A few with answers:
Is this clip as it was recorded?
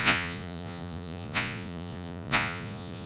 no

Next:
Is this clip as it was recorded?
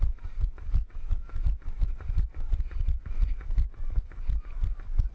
yes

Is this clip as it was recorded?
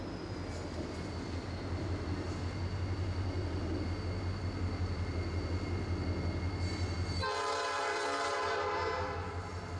yes